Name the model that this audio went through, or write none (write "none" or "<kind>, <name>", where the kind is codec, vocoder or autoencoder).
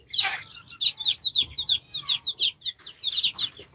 none